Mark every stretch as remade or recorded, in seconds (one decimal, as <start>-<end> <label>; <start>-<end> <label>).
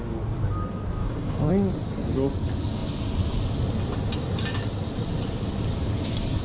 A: 0.0-1.0 recorded; 1.0-1.5 remade; 1.5-6.4 recorded